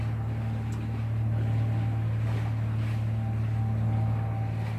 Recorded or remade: recorded